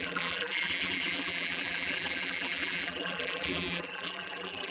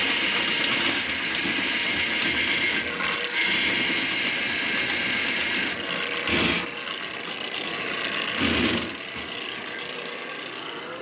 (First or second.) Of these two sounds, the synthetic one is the first